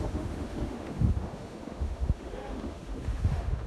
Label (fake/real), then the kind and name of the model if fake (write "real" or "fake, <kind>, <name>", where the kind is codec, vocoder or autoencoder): fake, autoencoder, DAC-VAE